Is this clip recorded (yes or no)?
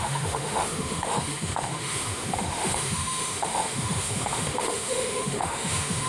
no